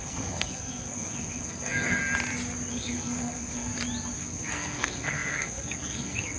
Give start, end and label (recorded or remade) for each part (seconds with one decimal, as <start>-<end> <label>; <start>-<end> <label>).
0.0-2.0 remade; 2.0-2.7 recorded; 2.7-3.7 remade; 3.7-4.2 recorded; 4.2-6.4 remade